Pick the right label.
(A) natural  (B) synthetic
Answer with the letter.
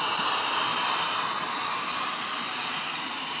A